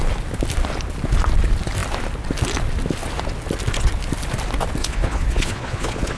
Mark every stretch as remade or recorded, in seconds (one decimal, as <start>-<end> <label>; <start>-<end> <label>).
0.0-4.8 recorded; 4.8-6.2 remade